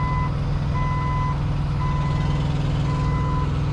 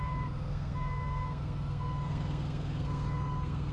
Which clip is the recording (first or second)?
first